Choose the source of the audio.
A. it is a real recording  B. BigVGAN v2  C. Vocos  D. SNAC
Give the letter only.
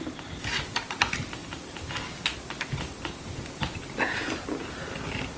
B